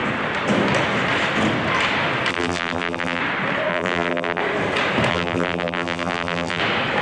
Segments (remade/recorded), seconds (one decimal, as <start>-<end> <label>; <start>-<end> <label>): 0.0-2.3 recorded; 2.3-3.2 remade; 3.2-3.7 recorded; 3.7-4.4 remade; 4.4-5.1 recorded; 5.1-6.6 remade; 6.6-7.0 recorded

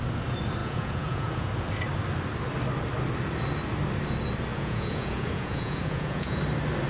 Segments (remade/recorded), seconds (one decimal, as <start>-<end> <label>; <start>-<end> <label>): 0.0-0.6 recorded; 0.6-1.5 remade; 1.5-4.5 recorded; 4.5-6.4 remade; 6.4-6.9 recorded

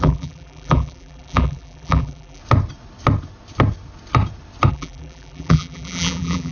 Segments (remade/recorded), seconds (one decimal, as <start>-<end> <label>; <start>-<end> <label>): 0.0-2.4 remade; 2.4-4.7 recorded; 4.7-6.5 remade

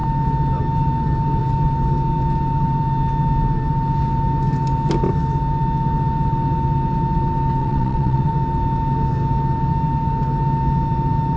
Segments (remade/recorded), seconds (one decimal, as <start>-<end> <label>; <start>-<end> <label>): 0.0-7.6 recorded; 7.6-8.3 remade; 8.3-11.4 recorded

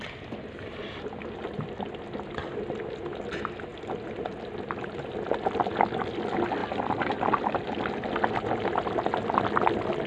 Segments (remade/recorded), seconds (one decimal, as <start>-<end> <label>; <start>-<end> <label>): 0.0-10.1 recorded